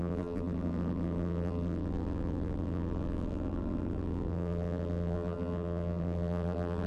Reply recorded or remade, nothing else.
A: remade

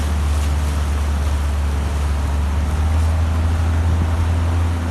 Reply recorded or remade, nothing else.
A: recorded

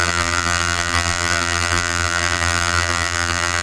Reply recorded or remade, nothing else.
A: remade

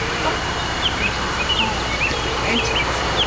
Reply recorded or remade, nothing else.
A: remade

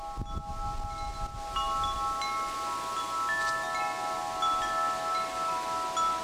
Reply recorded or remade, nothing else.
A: recorded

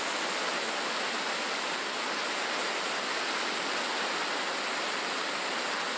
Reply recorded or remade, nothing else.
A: recorded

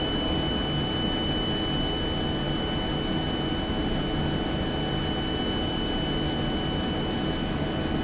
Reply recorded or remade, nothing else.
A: recorded